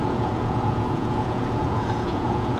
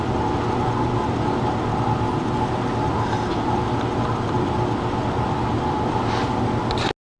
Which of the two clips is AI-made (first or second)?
first